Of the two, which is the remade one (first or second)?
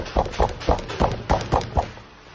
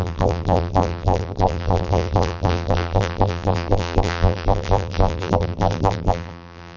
second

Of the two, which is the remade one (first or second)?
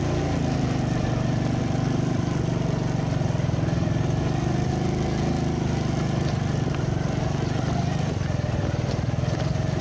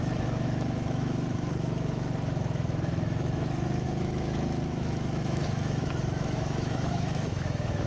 second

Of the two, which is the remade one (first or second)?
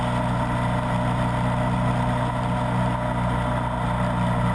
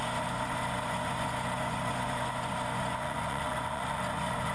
second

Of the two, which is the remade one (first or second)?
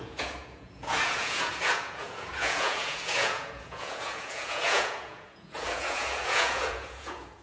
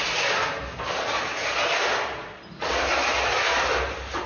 first